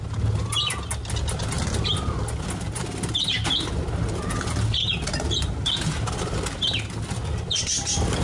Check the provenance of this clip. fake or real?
real